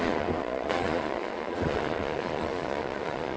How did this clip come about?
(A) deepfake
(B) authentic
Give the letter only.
A